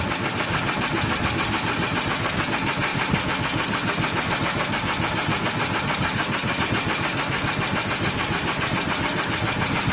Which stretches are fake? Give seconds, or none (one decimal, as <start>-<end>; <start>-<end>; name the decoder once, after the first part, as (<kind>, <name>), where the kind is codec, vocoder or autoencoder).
none